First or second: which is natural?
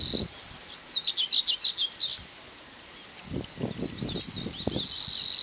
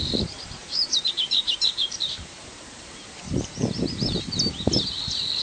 first